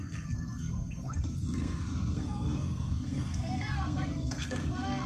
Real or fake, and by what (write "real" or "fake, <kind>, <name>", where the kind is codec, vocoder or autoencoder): fake, codec, SNAC